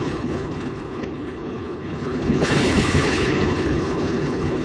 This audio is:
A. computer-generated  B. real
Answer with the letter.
A